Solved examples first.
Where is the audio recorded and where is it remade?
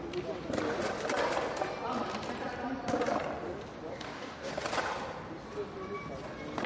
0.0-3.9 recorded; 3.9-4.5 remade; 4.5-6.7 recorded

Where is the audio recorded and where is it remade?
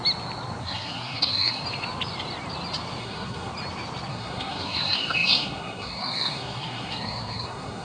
0.0-0.6 recorded; 0.6-1.6 remade; 1.6-3.0 recorded; 3.0-3.5 remade; 3.5-4.1 recorded; 4.1-7.8 remade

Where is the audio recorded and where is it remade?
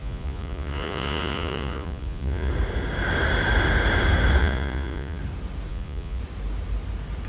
0.0-2.5 remade; 2.5-4.4 recorded; 4.4-5.2 remade; 5.2-5.7 recorded; 5.7-6.2 remade; 6.2-7.3 recorded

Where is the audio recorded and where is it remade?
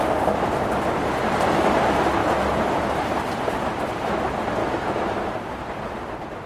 0.0-2.2 recorded; 2.2-2.8 remade; 2.8-4.6 recorded; 4.6-5.3 remade; 5.3-6.5 recorded